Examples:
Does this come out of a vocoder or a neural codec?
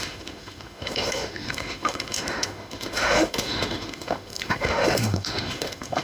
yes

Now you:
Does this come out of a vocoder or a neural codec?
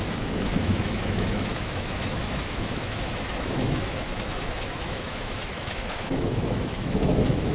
yes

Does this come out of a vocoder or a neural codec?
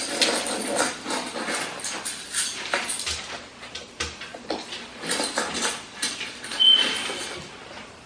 no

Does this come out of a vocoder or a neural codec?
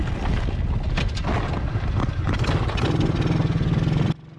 no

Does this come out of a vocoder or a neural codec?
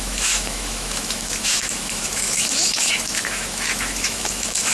yes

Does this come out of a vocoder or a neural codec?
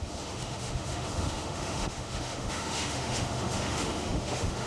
yes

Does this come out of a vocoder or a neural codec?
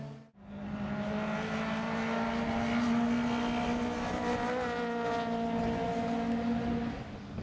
no